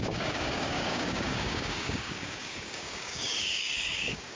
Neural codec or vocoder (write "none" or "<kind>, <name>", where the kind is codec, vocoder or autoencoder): codec, DAC